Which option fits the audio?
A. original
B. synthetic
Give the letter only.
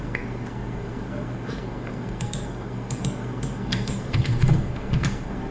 B